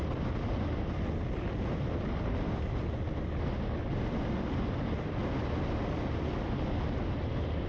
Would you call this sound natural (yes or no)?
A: yes